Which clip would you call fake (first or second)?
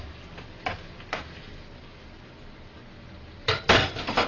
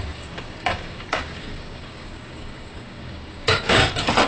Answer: second